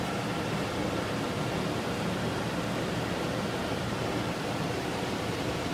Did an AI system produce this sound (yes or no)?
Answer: yes